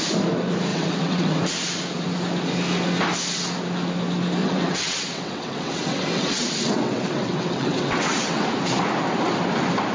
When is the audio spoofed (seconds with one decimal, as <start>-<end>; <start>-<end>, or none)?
0.7-1.4; 4.4-8.5